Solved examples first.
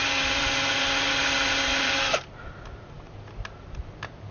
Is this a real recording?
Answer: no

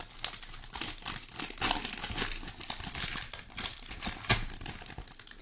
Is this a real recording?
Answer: yes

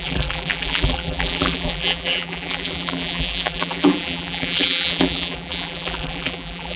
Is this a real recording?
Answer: no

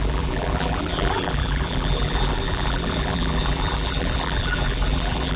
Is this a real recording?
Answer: no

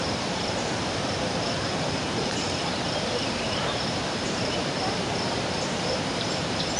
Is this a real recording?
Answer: no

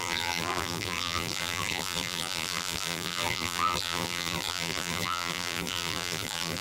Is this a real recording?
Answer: no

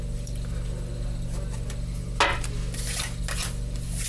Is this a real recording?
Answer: yes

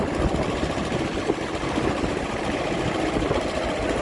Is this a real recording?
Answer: yes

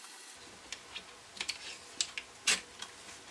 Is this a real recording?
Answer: yes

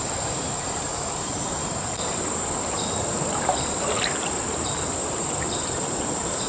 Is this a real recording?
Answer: no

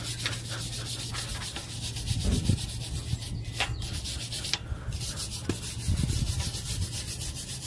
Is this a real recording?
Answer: yes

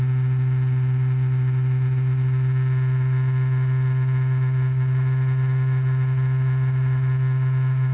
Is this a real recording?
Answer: yes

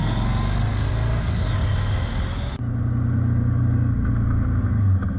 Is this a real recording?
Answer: yes